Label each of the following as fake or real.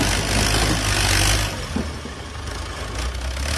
real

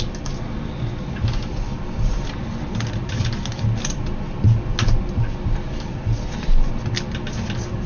real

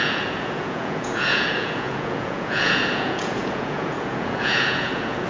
fake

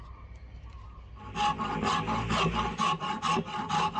real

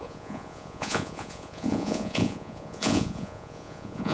fake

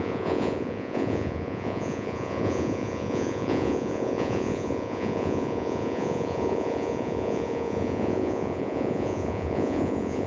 fake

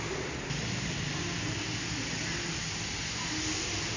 real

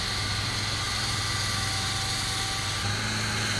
real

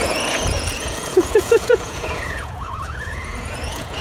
fake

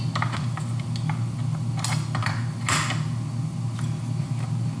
real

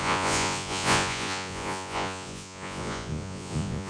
fake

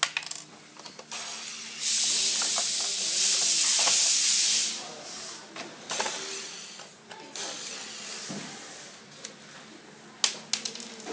real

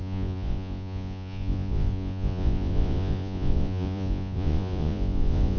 fake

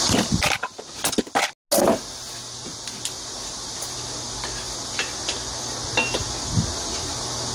real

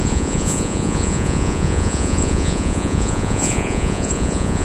fake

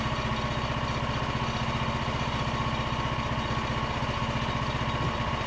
real